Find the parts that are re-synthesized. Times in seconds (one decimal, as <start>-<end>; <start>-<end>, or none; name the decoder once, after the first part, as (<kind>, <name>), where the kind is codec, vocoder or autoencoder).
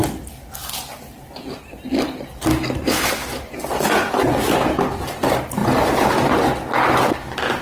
none